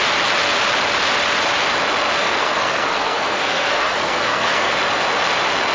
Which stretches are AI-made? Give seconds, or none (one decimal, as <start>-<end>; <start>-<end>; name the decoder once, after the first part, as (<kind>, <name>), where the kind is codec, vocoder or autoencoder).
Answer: 2.2-4.7 (codec, SNAC)